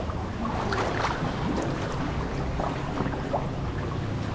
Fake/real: real